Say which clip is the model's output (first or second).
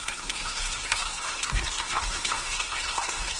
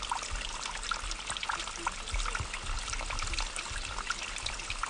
first